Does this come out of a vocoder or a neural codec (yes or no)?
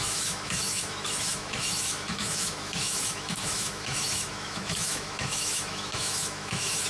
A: yes